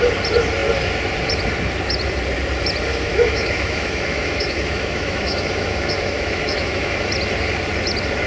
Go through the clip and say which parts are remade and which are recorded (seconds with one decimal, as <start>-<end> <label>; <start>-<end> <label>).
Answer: 0.0-2.9 recorded; 2.9-7.1 remade; 7.1-8.3 recorded